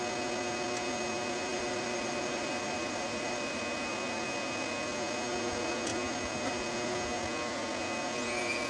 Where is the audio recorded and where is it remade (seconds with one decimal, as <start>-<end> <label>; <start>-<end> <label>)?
0.0-1.5 recorded; 1.5-3.6 remade; 3.6-8.7 recorded